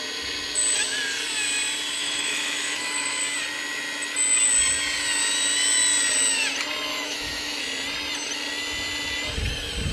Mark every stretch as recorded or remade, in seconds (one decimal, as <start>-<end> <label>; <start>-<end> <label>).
0.0-2.0 recorded; 2.0-3.2 remade; 3.2-6.9 recorded; 6.9-7.6 remade; 7.6-9.9 recorded